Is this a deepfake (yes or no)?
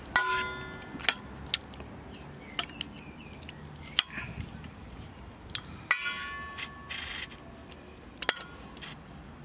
no